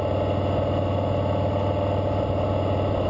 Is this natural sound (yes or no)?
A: yes